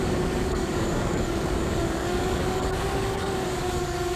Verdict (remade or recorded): remade